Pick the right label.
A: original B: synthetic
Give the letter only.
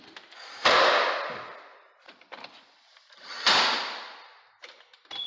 A